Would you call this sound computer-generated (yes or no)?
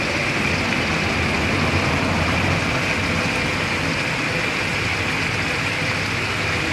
no